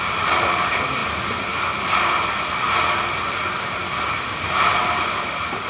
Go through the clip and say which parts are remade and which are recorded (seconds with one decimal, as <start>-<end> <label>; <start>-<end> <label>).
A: 0.0-1.0 remade; 1.0-4.1 recorded; 4.1-5.7 remade